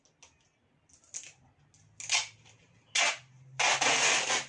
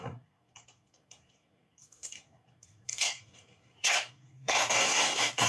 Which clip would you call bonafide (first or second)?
first